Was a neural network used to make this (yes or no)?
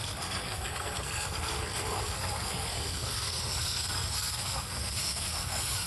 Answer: yes